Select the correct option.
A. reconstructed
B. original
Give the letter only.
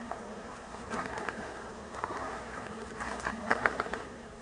A